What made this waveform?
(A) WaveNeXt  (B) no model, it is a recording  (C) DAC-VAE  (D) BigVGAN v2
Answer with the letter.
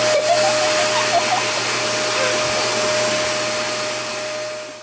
B